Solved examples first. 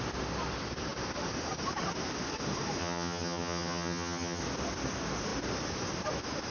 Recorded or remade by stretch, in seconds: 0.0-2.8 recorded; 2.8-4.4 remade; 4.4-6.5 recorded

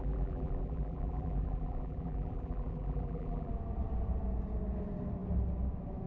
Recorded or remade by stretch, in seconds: 0.0-3.5 remade; 3.5-6.1 recorded

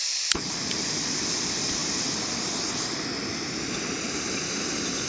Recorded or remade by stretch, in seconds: 0.0-5.1 recorded

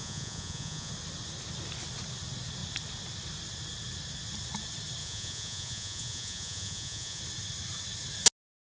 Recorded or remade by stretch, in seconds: 0.0-0.9 remade; 0.9-5.0 recorded; 5.0-7.2 remade; 7.2-8.7 recorded

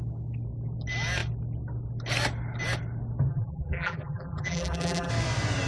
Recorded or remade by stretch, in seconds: 0.0-3.3 recorded; 3.3-5.1 remade; 5.1-5.7 recorded

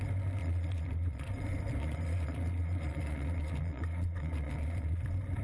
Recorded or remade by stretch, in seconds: 0.0-0.4 recorded; 0.4-1.3 remade; 1.3-1.8 recorded; 1.8-5.0 remade; 5.0-5.4 recorded

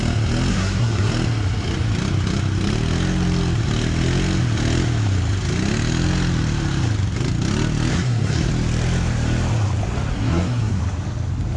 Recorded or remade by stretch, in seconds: 0.0-0.5 recorded; 0.5-1.1 remade; 1.1-7.9 recorded; 7.9-8.5 remade; 8.5-10.1 recorded; 10.1-10.8 remade; 10.8-11.6 recorded